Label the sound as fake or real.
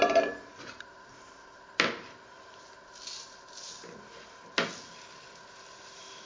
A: real